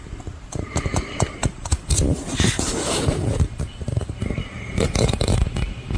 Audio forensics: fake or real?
fake